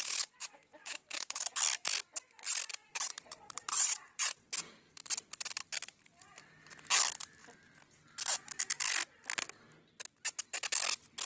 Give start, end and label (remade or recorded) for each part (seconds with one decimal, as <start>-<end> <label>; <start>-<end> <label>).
0.0-2.8 recorded; 2.8-4.5 remade; 4.5-11.3 recorded